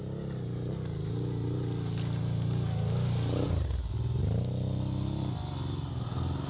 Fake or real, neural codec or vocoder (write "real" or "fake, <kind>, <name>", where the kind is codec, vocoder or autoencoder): real